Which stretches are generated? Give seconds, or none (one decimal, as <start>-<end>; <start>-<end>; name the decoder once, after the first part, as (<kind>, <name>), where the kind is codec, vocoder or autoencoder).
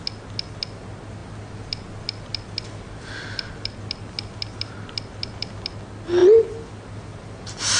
none